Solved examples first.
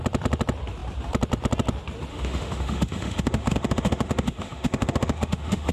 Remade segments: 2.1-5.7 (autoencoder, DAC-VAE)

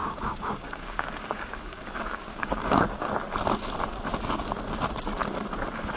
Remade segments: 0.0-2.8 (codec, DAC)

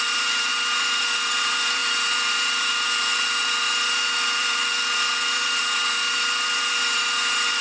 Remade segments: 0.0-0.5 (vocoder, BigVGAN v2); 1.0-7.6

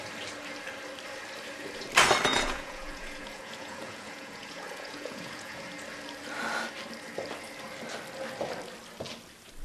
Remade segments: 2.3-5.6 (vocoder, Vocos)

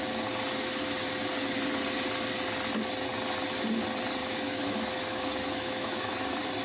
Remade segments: 4.2-6.1 (autoencoder, DAC-VAE)

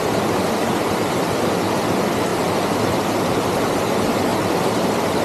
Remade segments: 2.3-3.7 (vocoder, BigVGAN v2); 4.3-5.2